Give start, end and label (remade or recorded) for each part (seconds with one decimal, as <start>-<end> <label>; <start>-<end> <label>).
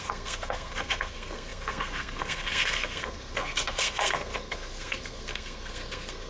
0.0-6.3 remade